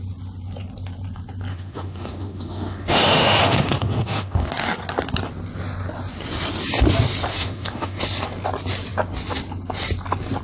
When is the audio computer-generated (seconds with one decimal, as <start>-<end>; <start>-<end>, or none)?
1.5-4.5; 7.3-8.0